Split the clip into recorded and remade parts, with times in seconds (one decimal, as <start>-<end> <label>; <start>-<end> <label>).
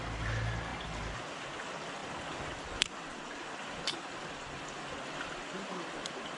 0.0-6.4 recorded